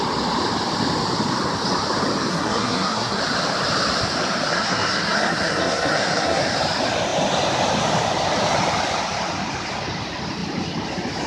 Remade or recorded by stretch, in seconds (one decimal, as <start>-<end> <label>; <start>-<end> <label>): 0.0-2.3 recorded; 2.3-3.2 remade; 3.2-4.5 recorded; 4.5-6.4 remade; 6.4-11.3 recorded